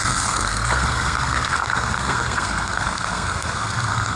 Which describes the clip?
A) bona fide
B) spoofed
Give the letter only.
B